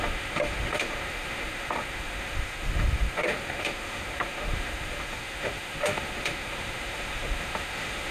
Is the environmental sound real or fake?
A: fake